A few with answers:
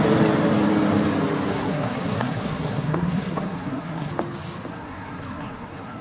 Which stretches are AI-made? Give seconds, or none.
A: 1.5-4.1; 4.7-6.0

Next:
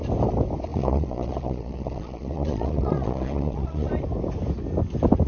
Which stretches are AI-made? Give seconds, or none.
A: 0.7-3.9